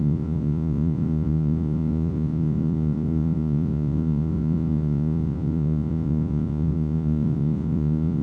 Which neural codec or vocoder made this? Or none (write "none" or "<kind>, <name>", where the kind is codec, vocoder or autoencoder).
vocoder, Vocos